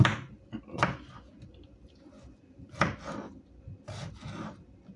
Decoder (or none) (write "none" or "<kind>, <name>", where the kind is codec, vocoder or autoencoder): none